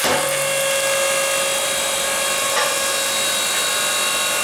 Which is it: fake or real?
real